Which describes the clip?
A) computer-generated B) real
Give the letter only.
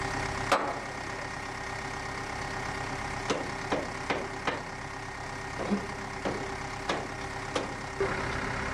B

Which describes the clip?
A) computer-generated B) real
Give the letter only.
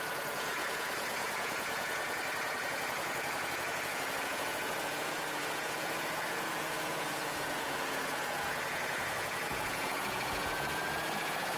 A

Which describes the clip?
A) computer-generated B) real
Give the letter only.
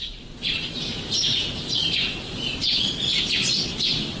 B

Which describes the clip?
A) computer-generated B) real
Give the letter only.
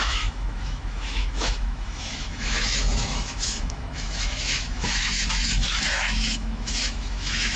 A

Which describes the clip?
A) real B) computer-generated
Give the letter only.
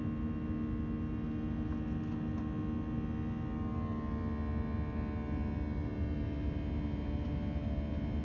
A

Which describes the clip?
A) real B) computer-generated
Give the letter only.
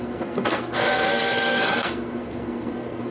B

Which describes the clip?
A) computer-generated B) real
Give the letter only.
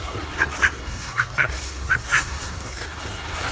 A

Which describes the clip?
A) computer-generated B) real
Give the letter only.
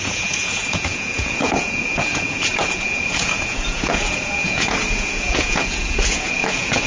A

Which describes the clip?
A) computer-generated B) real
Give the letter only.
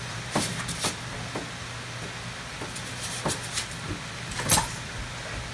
B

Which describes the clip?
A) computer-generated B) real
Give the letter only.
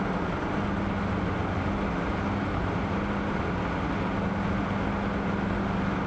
B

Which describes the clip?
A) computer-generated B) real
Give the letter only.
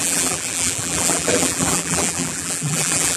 A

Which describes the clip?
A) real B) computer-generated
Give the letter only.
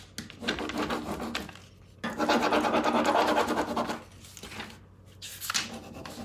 A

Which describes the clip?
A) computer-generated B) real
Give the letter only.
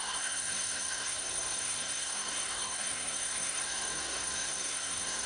A